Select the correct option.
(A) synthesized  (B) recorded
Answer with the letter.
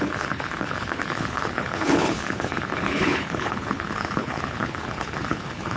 A